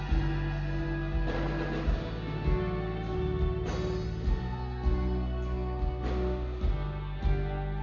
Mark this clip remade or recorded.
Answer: recorded